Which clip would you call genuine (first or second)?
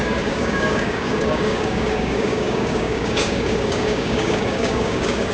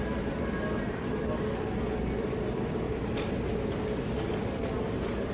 second